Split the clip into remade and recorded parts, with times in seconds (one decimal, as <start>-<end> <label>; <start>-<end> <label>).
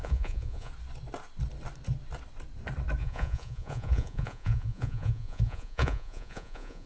0.0-0.7 remade; 0.7-3.0 recorded; 3.0-6.9 remade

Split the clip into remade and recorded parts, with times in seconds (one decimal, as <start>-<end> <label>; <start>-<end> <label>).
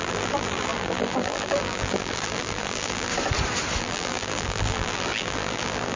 0.0-3.1 remade; 3.1-3.8 recorded; 3.8-6.0 remade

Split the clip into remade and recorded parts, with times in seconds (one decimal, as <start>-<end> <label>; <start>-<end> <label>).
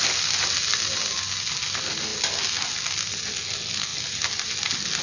0.0-5.0 recorded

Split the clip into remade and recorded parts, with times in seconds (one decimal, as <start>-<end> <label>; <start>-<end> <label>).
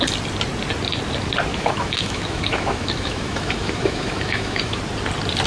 0.0-1.5 recorded; 1.5-4.8 remade; 4.8-5.5 recorded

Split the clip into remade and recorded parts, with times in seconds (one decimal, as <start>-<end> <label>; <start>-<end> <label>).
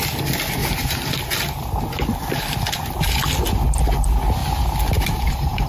0.0-0.6 recorded; 0.6-1.1 remade; 1.1-4.4 recorded; 4.4-5.7 remade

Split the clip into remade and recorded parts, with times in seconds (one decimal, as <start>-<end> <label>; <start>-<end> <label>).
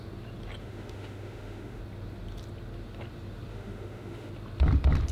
0.0-0.6 recorded; 0.6-1.8 remade; 1.8-3.5 recorded; 3.5-4.3 remade; 4.3-5.1 recorded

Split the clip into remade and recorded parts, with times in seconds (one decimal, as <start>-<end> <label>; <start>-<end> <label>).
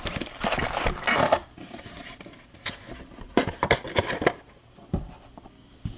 0.0-1.4 recorded; 1.4-5.0 remade; 5.0-6.0 recorded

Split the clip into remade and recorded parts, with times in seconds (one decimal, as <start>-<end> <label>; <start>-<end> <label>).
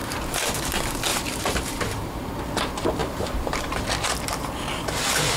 0.0-0.6 remade; 0.6-1.1 recorded; 1.1-2.4 remade; 2.4-3.0 recorded; 3.0-3.8 remade; 3.8-5.4 recorded